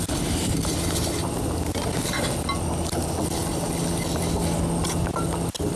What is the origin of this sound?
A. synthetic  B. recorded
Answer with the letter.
B